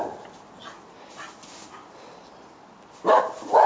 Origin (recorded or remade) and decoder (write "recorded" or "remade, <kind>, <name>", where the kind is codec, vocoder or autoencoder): recorded